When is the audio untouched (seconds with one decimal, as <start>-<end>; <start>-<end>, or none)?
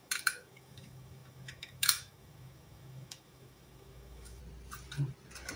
4.4-5.6